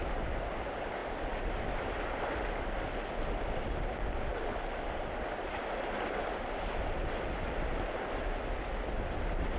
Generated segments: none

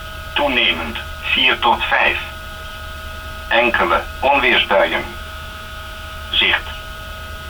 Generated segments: 5.1-6.4 (autoencoder, DAC-VAE)